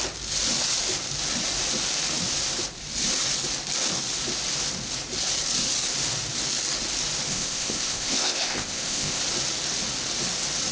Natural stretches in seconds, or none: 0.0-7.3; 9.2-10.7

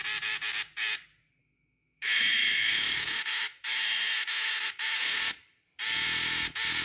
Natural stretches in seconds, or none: 0.0-1.4; 5.2-6.8

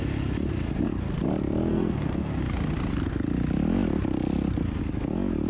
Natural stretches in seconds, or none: 0.0-1.7; 2.4-5.5

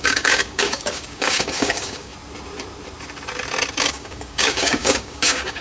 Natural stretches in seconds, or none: 2.1-3.9

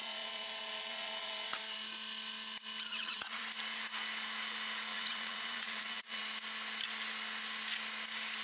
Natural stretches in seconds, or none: 1.6-2.9; 3.4-4.9; 6.2-8.4

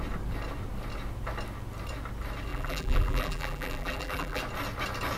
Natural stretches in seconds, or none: 0.0-2.5; 4.4-5.2

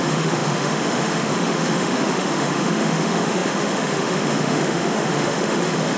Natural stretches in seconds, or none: none

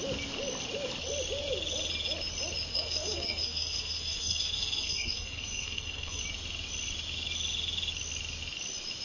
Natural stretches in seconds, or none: 0.0-2.7; 6.2-9.0